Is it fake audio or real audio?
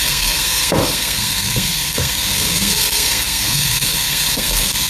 fake